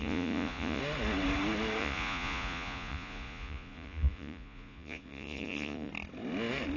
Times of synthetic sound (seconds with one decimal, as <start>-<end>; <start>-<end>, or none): 0.0-0.8; 1.8-5.9